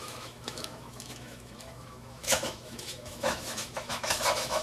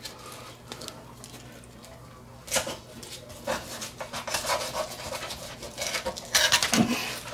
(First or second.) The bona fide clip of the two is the second